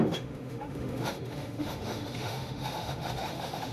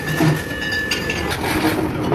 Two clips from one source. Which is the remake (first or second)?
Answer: first